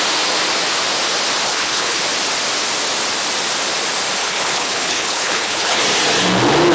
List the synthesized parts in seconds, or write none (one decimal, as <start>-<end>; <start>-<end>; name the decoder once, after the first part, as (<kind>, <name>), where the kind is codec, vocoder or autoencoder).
1.5-2.0 (codec, HILCodec); 4.2-5.8